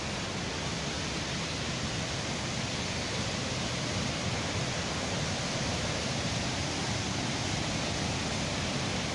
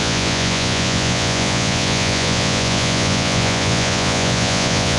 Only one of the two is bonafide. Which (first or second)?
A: first